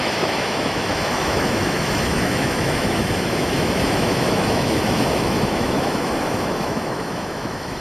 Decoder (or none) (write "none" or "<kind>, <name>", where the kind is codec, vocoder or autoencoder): autoencoder, DAC-VAE